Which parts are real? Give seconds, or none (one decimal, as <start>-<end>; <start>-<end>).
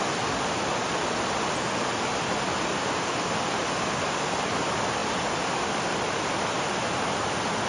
0.0-7.7